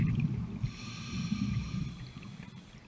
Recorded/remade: recorded